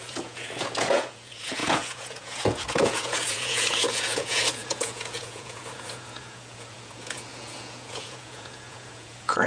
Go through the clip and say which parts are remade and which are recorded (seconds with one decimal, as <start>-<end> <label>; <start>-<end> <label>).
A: 0.0-9.5 remade